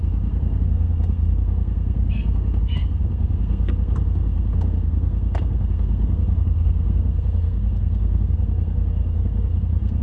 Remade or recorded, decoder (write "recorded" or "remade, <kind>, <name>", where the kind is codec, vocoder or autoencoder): remade, codec, SNAC